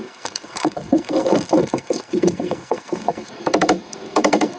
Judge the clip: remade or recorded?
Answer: remade